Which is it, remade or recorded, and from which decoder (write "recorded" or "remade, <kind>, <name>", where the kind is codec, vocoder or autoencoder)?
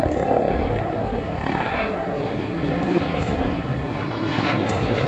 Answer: remade, codec, SNAC